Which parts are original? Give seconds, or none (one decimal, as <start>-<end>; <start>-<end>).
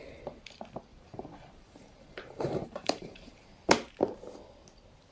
0.0-0.9; 3.4-5.1